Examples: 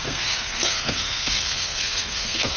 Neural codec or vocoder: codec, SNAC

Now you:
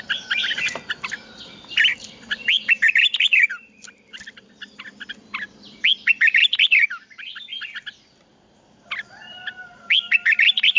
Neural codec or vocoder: vocoder, BigVGAN v2